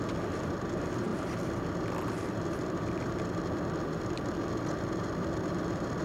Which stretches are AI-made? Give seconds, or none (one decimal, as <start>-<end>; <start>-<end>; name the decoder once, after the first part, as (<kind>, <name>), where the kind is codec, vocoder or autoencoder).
none